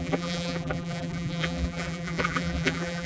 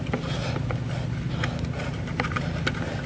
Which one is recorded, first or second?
second